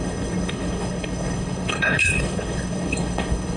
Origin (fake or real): fake